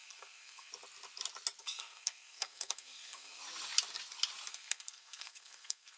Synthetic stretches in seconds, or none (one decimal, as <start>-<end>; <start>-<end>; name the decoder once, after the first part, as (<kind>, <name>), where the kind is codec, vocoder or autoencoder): 0.0-0.7 (codec, SNAC); 1.6-3.4; 4.5-6.0